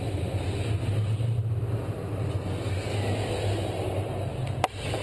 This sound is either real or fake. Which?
real